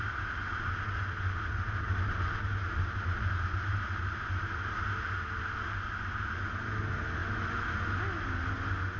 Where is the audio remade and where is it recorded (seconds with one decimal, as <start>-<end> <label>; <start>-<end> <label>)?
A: 0.0-9.0 recorded